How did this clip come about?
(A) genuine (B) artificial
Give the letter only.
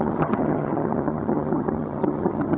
B